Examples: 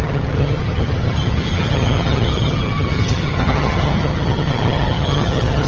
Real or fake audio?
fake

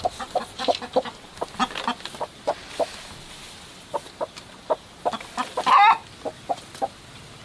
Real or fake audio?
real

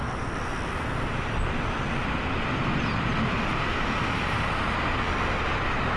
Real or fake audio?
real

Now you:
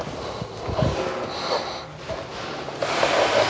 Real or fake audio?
real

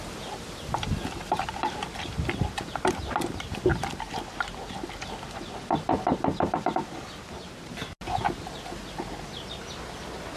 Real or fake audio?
real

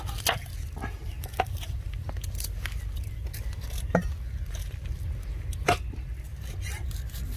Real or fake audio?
real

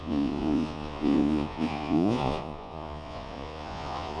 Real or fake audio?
fake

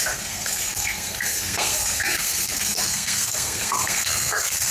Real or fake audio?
fake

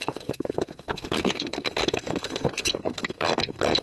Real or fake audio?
fake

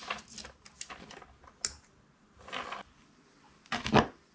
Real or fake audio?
real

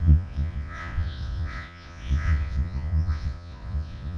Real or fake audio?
fake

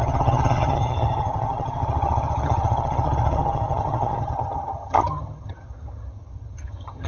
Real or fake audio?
fake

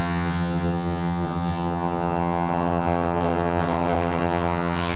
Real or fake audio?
fake